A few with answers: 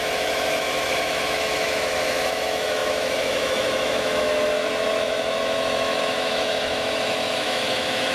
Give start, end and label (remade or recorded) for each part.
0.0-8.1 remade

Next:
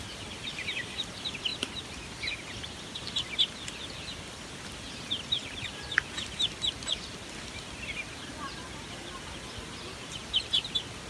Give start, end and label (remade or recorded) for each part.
0.0-11.1 recorded

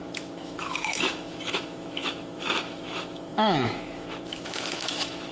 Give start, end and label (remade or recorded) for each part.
0.0-5.3 remade